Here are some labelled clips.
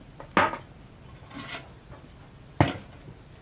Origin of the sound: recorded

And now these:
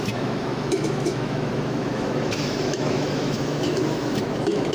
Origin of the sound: remade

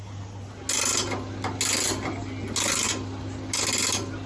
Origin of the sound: recorded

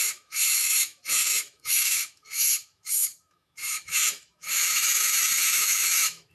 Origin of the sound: remade